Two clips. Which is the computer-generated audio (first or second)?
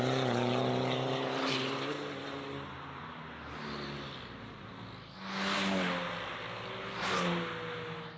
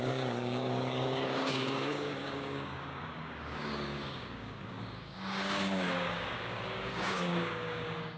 second